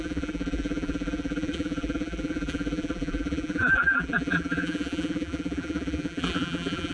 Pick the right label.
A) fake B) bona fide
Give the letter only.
A